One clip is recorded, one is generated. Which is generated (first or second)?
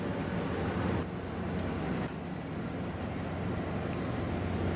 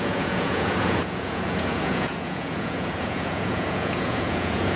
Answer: second